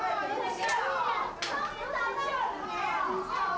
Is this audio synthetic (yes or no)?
no